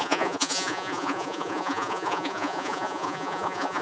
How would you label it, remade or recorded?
remade